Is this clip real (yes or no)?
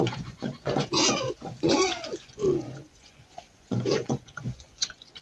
no